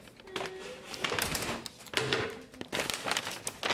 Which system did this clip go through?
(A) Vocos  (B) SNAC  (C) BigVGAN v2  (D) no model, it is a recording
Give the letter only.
D